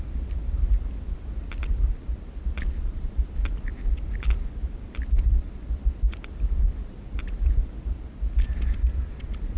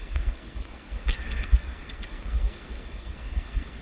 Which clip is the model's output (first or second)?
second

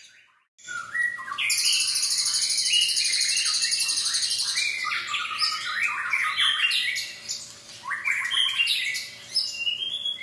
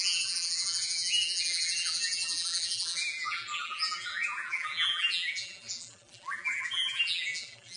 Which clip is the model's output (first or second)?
second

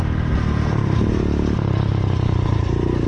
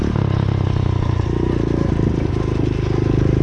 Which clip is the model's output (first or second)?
first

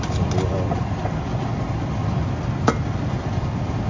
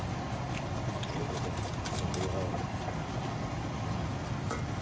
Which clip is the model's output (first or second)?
second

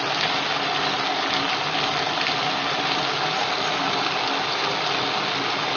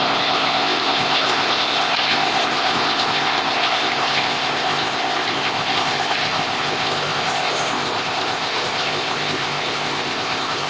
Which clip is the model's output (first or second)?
second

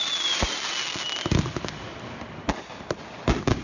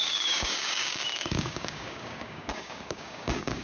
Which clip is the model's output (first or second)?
second